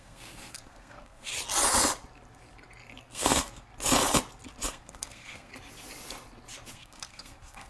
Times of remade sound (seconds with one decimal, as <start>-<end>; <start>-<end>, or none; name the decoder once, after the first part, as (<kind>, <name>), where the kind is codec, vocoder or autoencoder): 0.0-1.3 (codec, SNAC); 3.0-3.7; 4.7-5.5; 6.7-7.7